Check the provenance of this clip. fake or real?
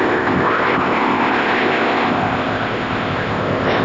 fake